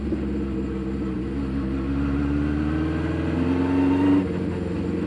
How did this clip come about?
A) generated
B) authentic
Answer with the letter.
B